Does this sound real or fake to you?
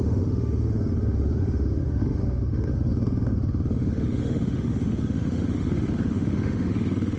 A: fake